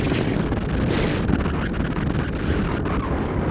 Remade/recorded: recorded